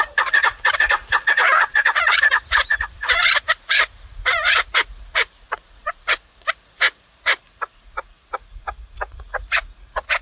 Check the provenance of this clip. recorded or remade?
remade